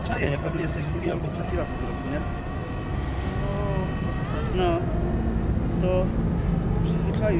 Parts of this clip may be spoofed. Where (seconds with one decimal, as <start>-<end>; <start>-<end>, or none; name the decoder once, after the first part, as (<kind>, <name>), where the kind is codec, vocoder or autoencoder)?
0.0-1.5 (vocoder, HiFi-GAN)